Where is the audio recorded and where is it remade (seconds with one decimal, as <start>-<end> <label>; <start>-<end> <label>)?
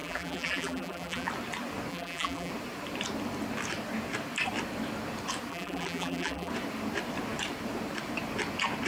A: 0.0-1.3 remade; 1.3-1.9 recorded; 1.9-2.5 remade; 2.5-5.5 recorded; 5.5-6.5 remade; 6.5-8.9 recorded